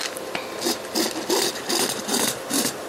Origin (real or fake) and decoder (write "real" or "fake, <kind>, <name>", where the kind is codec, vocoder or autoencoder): real